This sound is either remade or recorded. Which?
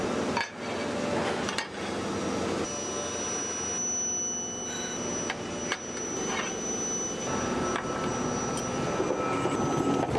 recorded